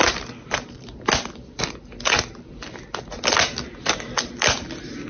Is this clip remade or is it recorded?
recorded